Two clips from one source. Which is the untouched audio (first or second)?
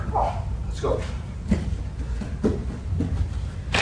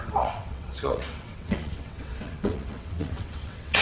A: first